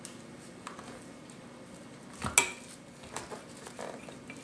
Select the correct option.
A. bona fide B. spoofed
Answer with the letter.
A